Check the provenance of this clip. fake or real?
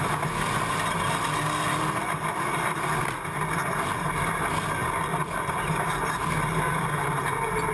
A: real